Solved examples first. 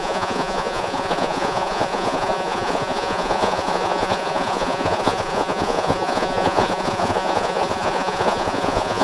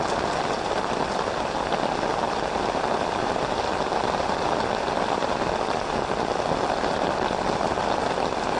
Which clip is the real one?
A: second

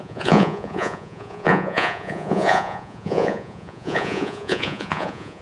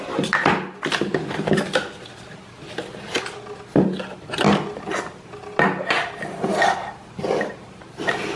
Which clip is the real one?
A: second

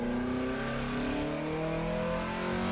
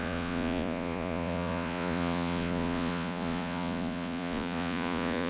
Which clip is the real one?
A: first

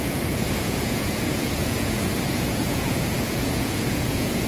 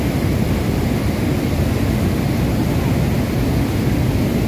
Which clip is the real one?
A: second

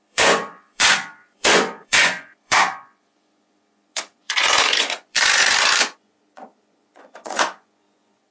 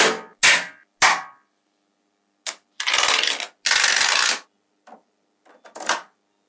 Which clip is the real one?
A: second